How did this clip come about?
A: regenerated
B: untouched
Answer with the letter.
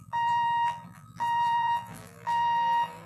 A